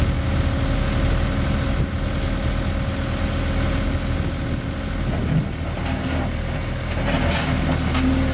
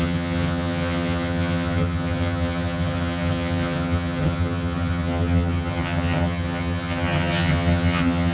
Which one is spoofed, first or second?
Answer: second